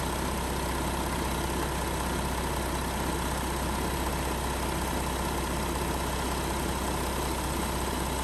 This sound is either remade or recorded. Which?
recorded